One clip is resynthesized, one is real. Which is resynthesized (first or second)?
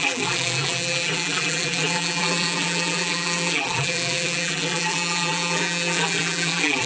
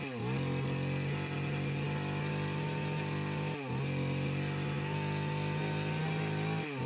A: first